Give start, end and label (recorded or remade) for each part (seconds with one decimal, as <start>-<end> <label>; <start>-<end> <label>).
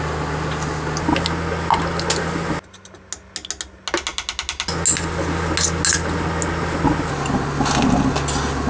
0.0-8.7 recorded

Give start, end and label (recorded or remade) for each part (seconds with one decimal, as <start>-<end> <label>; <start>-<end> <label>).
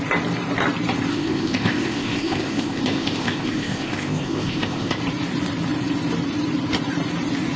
0.0-1.1 recorded; 1.1-5.0 remade; 5.0-7.6 recorded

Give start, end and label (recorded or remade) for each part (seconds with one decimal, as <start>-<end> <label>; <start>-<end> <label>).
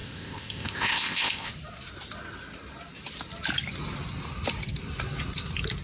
0.0-1.5 remade; 1.5-5.8 recorded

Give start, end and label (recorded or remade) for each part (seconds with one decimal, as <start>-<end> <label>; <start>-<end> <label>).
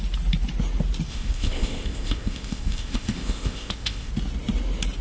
0.0-1.1 recorded; 1.1-4.1 remade; 4.1-5.0 recorded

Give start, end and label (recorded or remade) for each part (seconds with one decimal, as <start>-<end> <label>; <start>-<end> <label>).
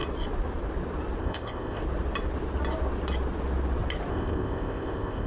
0.0-1.2 recorded; 1.2-1.8 remade; 1.8-4.1 recorded; 4.1-5.3 remade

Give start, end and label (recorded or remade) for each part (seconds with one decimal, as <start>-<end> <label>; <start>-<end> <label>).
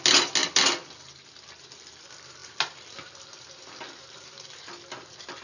0.0-5.4 recorded